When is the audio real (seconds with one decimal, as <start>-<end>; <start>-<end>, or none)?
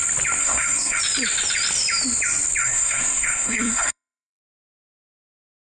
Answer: 0.0-0.4; 1.0-2.6; 4.4-5.6